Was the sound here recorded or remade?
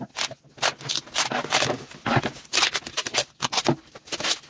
recorded